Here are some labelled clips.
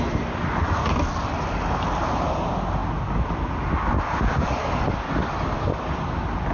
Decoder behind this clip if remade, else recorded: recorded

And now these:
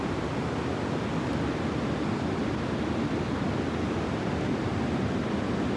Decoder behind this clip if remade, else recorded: recorded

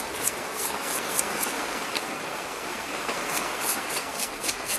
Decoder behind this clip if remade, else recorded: remade, codec, SNAC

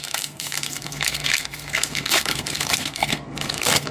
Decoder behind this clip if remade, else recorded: remade, codec, SNAC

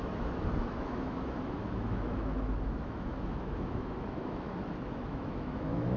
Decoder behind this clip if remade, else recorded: remade, autoencoder, DAC-VAE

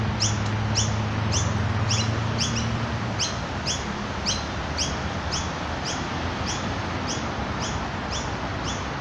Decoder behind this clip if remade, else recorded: recorded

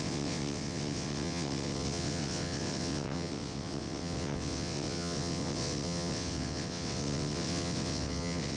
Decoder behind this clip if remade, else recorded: remade, vocoder, WaveNeXt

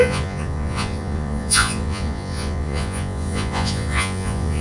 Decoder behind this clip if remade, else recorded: remade, vocoder, Vocos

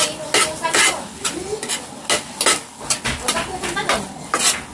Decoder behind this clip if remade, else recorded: recorded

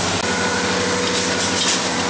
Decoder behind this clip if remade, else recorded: recorded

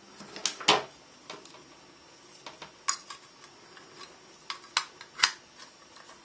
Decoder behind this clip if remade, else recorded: recorded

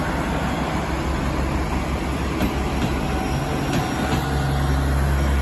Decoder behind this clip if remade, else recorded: recorded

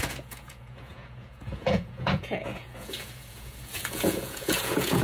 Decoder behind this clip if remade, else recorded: remade, vocoder, Vocos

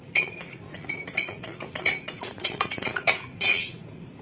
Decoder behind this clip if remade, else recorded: remade, vocoder, Vocos